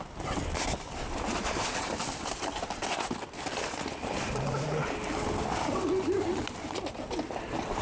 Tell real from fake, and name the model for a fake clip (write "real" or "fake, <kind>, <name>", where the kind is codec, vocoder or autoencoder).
real